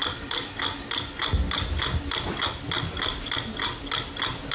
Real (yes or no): yes